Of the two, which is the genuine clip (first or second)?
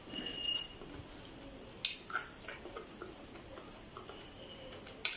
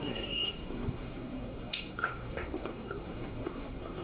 first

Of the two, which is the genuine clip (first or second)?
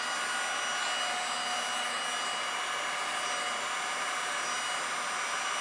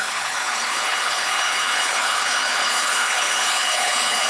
first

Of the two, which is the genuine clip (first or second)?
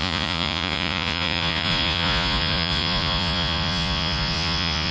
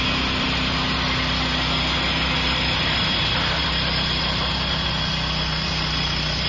second